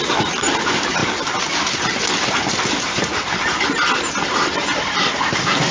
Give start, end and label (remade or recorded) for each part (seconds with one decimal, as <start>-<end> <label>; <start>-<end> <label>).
0.0-5.7 recorded